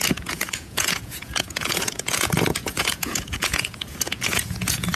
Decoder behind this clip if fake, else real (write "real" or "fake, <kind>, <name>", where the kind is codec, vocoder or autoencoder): fake, vocoder, Vocos